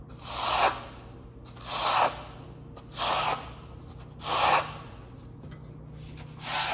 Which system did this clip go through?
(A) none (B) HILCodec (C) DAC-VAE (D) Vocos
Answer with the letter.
A